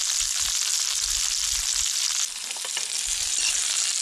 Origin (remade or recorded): recorded